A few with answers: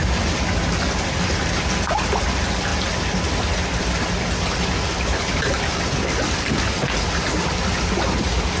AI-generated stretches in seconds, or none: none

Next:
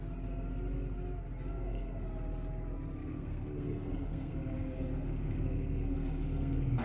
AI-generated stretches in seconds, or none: 1.5-2.1 (codec, SNAC); 3.0-6.8

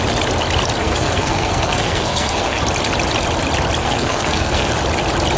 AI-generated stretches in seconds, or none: 0.8-2.6 (codec, SNAC); 3.8-4.7

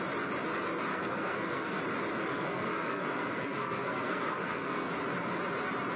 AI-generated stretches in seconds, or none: 0.9-1.8 (codec, SNAC); 2.3-4.9

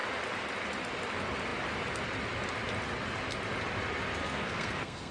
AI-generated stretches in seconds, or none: 4.2-5.1 (codec, SNAC)